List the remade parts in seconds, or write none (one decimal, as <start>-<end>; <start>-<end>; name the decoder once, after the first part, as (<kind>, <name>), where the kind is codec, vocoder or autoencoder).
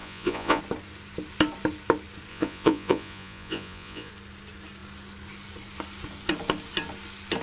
0.0-0.6 (vocoder, Vocos); 2.3-4.1